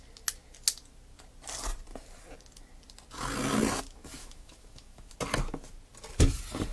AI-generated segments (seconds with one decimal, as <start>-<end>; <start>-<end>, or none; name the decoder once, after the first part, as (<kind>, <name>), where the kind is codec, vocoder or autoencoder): 4.2-5.1 (autoencoder, DAC-VAE)